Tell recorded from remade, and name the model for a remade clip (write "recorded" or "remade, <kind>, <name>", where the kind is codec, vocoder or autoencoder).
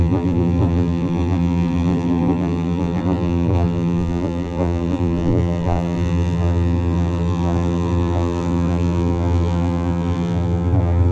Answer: remade, vocoder, BigVGAN v2